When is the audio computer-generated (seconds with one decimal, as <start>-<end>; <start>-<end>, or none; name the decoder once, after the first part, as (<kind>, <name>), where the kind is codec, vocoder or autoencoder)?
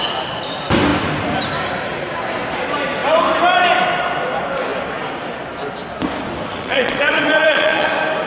6.5-7.9 (vocoder, WaveNeXt)